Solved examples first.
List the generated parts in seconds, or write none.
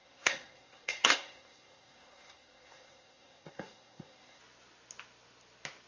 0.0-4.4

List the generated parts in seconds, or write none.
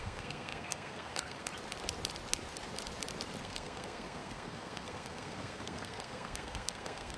0.0-1.5; 3.4-7.2